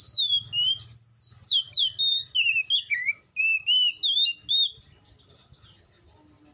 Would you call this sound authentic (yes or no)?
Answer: yes